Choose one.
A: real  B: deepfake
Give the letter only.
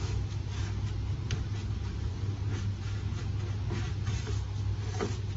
A